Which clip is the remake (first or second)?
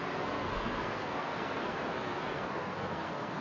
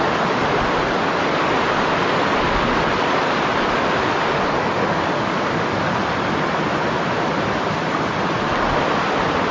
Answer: first